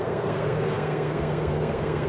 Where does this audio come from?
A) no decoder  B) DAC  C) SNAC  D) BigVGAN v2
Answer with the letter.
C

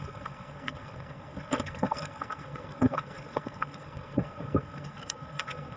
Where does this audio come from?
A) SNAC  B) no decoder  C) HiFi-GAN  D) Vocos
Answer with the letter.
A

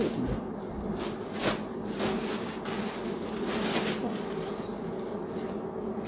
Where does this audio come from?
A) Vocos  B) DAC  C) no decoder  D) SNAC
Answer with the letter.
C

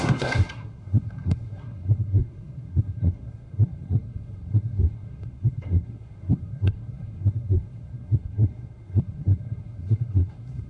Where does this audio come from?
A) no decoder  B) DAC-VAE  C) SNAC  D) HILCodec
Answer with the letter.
C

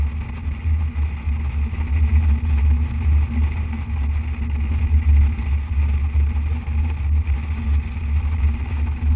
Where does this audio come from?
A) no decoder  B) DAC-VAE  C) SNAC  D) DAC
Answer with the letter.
A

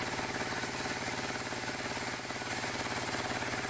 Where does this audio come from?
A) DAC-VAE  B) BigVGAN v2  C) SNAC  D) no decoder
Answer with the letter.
D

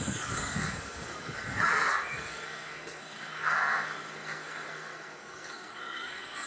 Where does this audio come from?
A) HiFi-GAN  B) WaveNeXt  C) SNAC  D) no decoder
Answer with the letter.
C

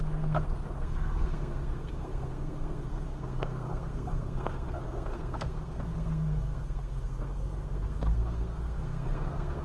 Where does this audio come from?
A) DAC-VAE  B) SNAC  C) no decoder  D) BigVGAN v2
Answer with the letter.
B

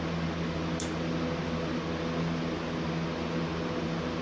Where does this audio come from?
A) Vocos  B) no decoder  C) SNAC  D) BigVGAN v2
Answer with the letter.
B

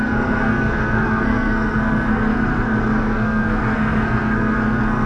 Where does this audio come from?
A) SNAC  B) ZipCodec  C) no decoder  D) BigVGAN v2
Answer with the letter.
A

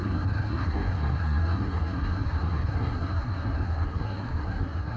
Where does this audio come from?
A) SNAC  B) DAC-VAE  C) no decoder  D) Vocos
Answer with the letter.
A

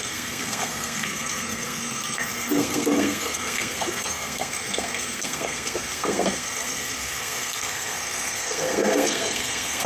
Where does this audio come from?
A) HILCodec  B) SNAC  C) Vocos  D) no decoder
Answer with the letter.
B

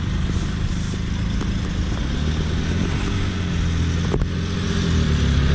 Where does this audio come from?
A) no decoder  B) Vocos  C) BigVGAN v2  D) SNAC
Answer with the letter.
A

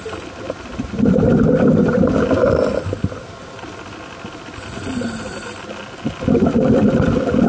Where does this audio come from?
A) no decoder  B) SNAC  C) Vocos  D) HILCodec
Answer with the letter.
A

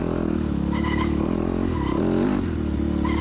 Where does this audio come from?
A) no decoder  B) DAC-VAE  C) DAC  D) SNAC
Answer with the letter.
A